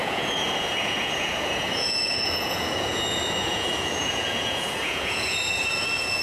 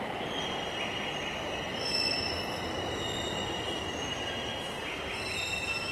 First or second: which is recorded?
second